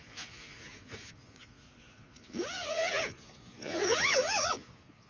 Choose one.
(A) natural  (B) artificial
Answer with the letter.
B